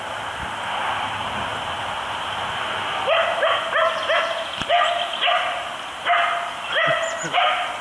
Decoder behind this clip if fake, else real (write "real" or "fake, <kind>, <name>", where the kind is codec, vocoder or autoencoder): real